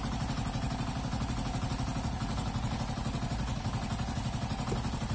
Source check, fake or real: real